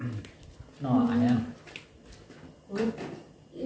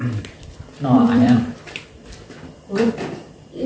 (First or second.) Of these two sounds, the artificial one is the second